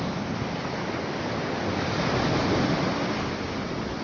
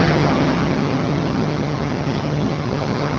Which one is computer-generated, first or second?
second